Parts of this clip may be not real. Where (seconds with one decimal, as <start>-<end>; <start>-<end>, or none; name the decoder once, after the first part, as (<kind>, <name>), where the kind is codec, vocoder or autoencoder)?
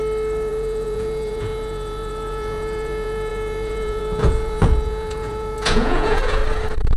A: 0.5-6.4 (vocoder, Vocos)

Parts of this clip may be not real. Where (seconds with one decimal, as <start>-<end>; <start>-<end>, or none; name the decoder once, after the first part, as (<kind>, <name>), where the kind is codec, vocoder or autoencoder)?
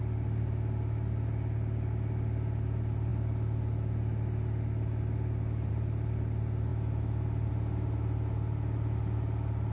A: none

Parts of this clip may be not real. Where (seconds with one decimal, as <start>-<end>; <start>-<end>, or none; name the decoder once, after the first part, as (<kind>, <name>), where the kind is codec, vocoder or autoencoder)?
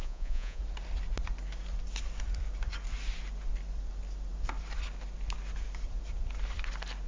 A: 0.0-0.6 (vocoder, Vocos)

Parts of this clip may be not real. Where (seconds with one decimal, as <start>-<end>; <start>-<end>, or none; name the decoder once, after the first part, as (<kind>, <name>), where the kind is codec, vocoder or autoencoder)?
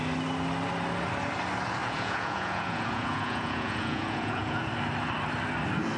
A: 1.8-4.7 (vocoder, Vocos)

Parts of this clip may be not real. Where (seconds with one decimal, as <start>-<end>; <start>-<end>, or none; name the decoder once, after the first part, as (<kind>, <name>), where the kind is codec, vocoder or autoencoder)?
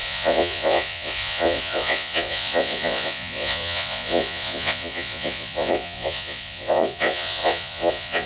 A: 0.0-8.3 (vocoder, Vocos)